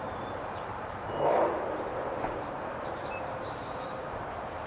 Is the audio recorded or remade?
remade